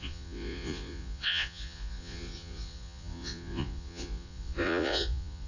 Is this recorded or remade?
remade